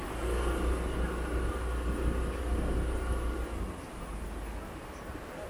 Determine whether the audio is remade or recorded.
recorded